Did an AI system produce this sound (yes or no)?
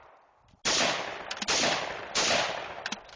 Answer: no